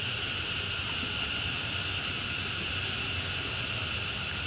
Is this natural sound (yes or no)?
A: yes